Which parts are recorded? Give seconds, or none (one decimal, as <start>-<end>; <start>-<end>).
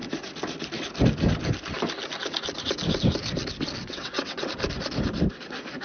0.0-3.8; 4.5-5.8